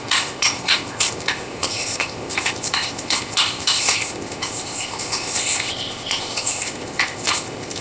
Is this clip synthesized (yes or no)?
yes